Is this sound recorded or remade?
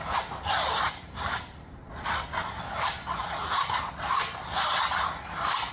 recorded